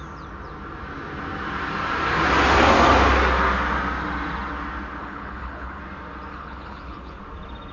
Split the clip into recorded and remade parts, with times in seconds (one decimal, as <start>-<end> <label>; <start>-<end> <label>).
0.0-5.0 recorded; 5.0-5.8 remade; 5.8-6.3 recorded; 6.3-7.2 remade; 7.2-7.7 recorded